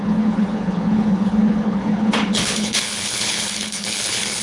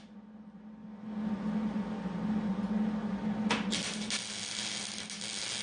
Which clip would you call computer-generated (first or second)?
first